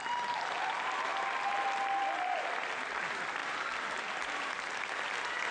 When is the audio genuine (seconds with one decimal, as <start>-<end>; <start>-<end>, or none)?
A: 0.0-5.5